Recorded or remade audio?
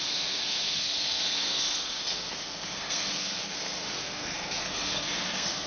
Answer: remade